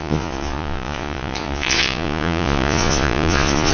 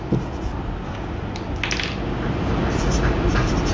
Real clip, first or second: second